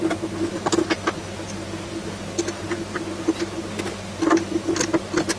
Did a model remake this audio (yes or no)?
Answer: no